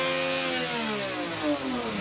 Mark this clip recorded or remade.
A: recorded